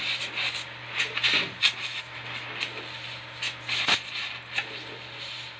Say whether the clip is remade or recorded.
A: recorded